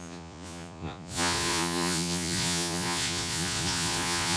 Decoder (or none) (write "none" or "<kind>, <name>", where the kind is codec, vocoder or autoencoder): vocoder, Vocos